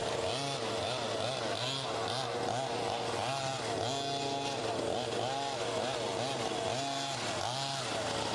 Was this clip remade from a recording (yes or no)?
no